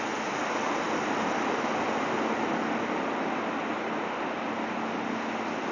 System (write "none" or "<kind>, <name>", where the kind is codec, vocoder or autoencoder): none